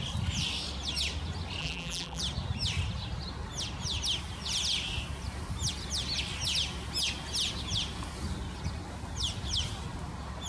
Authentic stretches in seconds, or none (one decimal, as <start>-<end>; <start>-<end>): 0.0-1.6; 2.2-10.5